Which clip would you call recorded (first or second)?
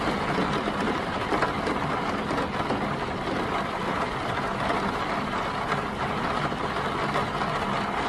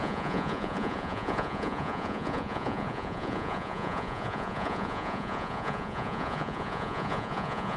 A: first